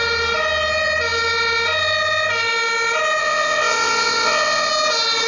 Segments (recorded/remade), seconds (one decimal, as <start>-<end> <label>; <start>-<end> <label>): 0.0-3.2 recorded; 3.2-4.7 remade; 4.7-5.3 recorded